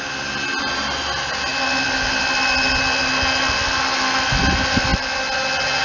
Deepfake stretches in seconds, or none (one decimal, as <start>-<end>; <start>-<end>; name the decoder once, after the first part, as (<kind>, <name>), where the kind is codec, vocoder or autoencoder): none